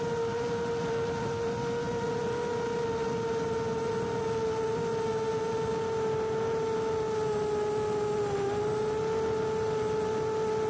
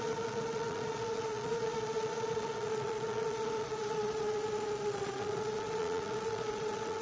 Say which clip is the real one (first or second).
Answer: first